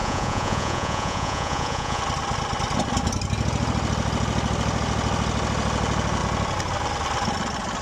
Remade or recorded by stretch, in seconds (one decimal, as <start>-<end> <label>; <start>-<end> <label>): 0.0-2.0 remade; 2.0-7.8 recorded